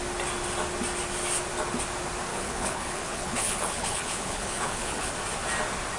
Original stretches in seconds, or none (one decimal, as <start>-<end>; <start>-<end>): 0.0-2.3; 5.1-6.0